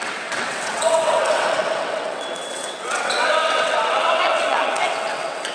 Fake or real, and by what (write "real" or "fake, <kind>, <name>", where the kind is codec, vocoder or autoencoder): fake, vocoder, WaveNeXt